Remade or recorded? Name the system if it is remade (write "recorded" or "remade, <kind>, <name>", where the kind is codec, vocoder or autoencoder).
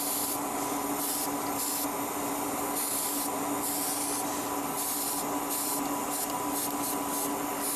recorded